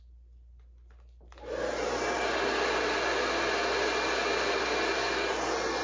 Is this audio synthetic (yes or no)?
no